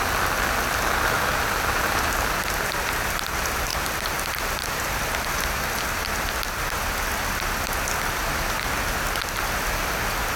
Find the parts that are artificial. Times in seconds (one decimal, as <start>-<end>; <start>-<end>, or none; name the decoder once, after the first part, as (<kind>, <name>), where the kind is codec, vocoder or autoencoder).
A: none